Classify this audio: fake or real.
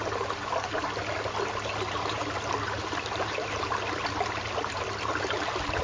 real